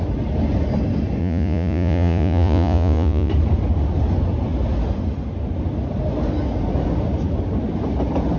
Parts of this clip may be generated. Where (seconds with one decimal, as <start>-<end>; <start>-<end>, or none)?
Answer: 1.2-3.3

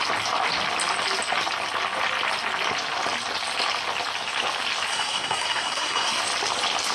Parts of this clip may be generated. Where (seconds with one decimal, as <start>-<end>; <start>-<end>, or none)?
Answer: 4.9-6.2

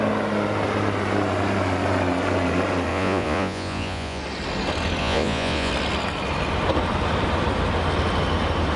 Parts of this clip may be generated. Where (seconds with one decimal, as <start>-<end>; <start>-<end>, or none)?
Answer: 2.9-4.2; 5.0-5.7